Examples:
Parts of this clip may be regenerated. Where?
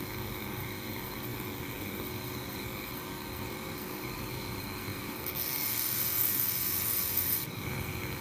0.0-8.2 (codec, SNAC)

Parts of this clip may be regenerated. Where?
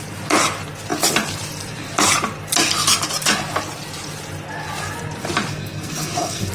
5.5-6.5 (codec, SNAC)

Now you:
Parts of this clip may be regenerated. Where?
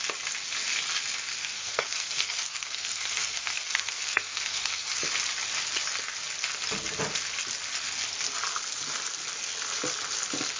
1.4-5.0 (codec, SNAC)